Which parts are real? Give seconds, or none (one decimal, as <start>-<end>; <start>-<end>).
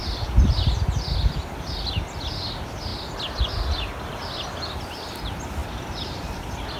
0.0-6.8